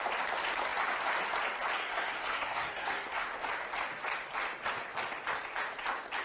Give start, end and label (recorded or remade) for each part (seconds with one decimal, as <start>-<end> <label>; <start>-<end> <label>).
0.0-1.8 recorded; 1.8-3.4 remade; 3.4-6.2 recorded